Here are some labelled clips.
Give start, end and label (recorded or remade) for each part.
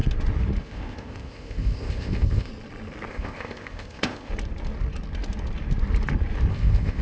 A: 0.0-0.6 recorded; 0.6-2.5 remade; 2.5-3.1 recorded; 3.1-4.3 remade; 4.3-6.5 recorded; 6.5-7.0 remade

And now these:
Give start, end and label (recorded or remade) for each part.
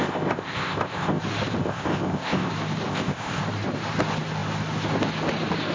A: 0.0-1.2 remade; 1.2-1.6 recorded; 1.6-2.5 remade; 2.5-2.9 recorded; 2.9-3.4 remade; 3.4-5.7 recorded